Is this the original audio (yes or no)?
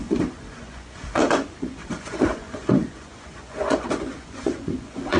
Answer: no